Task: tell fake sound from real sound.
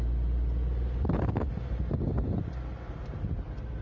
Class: real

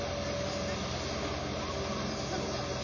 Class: real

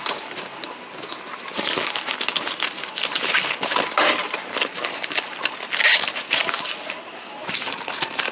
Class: real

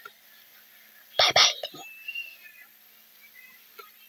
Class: fake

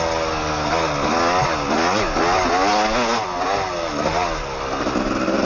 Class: real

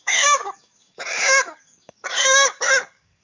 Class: fake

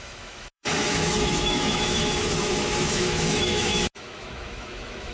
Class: fake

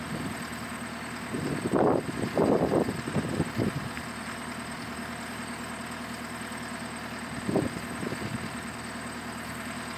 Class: fake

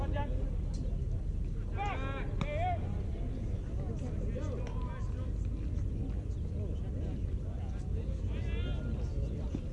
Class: real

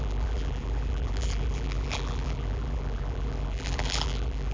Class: fake